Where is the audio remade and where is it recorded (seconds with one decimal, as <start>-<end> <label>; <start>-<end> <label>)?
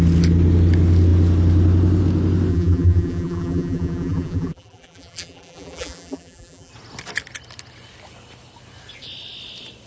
0.0-2.5 recorded; 2.5-6.7 remade; 6.7-9.9 recorded